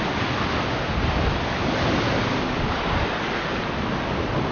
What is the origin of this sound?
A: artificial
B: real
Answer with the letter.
B